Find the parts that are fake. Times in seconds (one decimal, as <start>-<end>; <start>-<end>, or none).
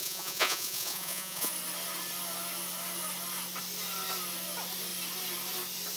0.0-1.5